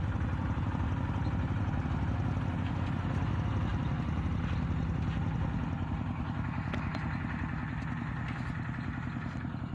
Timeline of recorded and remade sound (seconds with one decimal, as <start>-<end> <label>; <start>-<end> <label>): 0.0-9.7 recorded